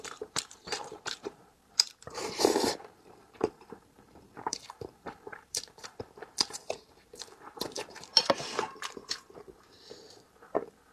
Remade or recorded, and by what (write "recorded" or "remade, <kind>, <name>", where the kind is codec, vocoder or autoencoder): remade, vocoder, BigVGAN v2